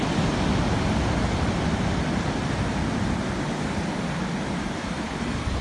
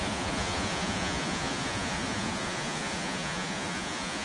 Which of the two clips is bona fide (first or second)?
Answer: first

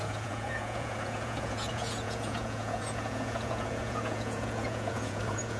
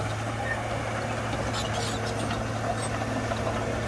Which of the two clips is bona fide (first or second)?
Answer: second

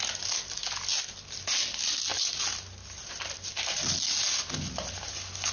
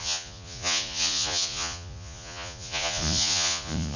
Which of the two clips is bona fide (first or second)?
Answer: first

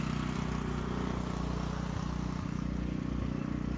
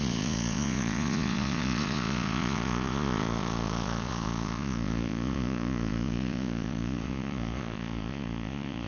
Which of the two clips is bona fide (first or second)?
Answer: first